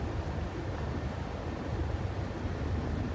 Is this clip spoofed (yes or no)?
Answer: no